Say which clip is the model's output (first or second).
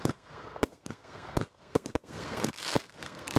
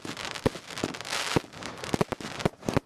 first